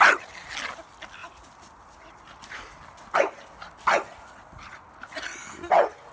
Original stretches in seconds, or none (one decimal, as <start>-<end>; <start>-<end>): 0.0-6.1